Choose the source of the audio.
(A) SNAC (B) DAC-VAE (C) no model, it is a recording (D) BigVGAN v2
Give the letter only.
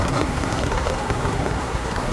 A